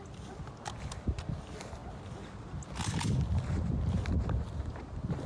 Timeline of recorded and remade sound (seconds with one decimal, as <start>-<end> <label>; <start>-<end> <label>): 0.0-5.3 recorded